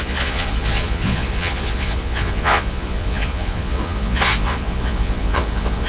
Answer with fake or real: fake